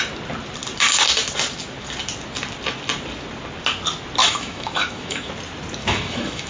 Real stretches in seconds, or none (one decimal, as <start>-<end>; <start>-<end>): 0.0-4.2; 5.3-5.8